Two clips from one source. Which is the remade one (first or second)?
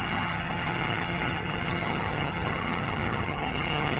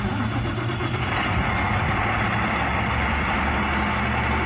first